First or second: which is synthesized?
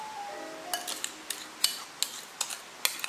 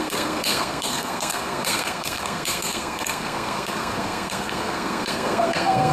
second